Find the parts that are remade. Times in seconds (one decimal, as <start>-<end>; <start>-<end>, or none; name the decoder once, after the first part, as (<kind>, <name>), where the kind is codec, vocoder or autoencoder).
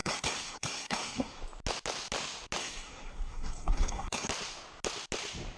0.0-1.4 (codec, SNAC); 2.6-4.3